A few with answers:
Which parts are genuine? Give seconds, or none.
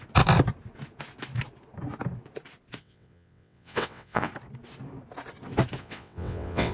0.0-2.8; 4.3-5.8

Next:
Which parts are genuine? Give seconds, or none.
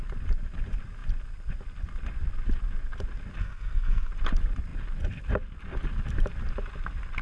0.0-3.4; 4.1-7.2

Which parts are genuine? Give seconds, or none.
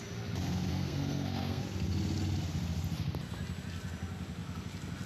0.0-0.7; 1.6-5.1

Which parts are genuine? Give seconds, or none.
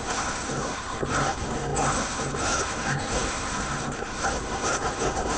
none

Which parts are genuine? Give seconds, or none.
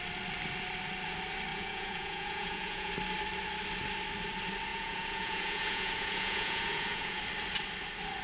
0.0-1.5; 2.9-4.7; 7.2-8.2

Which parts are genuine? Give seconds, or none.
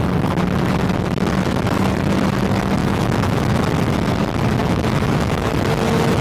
0.0-2.8; 3.6-4.6; 5.5-6.2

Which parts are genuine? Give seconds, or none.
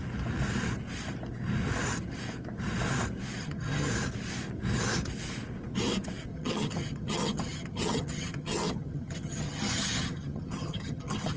0.0-3.4; 3.9-6.3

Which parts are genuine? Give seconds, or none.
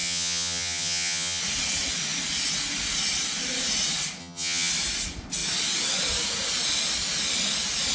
1.4-4.2; 4.7-7.9